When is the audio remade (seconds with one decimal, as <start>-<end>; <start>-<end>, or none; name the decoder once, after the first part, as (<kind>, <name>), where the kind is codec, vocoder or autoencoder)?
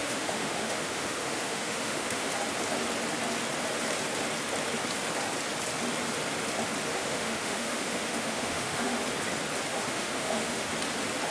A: 0.0-2.3 (autoencoder, DAC-VAE); 6.9-9.0; 9.7-10.7